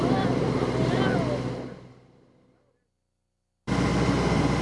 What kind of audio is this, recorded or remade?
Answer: recorded